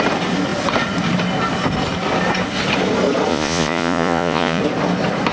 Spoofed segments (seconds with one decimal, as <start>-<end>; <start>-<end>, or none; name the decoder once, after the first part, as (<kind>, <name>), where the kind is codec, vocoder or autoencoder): 3.3-4.6 (vocoder, Vocos)